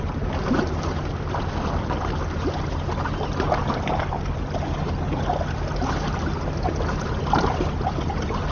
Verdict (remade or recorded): recorded